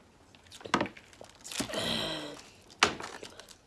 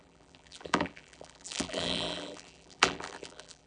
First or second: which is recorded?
first